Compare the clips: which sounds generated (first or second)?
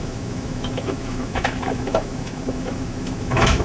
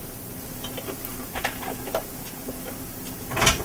first